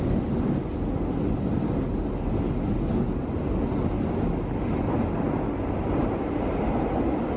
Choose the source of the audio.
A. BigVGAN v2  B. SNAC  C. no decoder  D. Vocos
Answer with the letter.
C